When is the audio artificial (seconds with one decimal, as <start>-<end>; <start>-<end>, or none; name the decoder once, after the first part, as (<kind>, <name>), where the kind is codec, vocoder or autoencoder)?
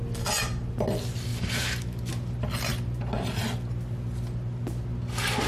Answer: 1.3-2.1 (vocoder, BigVGAN v2)